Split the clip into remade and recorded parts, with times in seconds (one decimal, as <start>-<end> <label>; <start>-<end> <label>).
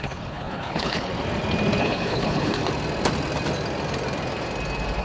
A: 0.0-1.1 remade; 1.1-1.8 recorded; 1.8-2.6 remade; 2.6-5.0 recorded